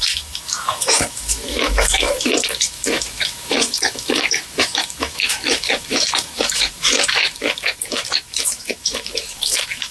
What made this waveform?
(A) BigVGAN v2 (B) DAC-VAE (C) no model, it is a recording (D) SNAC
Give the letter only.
B